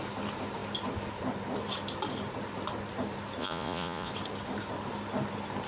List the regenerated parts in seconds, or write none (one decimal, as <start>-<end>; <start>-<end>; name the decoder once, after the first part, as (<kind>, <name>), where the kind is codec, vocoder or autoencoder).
3.4-4.1 (vocoder, Vocos)